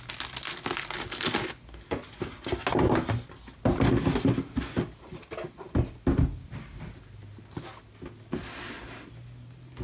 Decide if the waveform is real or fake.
real